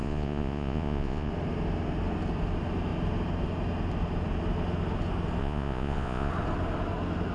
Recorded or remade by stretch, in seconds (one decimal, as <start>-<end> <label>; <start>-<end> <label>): 0.0-1.3 remade; 1.3-5.4 recorded; 5.4-6.3 remade; 6.3-7.3 recorded